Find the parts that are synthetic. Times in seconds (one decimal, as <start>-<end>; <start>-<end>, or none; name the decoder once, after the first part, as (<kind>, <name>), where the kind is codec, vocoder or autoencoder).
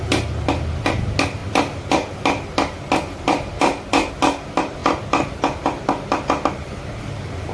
none